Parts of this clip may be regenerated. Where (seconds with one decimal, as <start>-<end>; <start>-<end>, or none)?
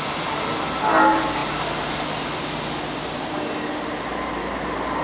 none